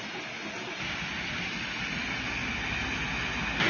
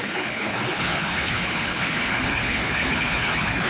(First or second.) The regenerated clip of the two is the second